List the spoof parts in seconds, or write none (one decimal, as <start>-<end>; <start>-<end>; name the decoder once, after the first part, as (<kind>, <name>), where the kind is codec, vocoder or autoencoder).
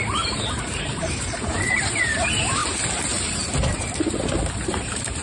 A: 0.0-2.6 (vocoder, BigVGAN v2); 4.5-5.2